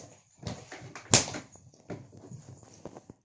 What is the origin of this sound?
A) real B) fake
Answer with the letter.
A